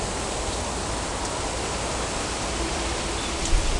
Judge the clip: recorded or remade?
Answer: recorded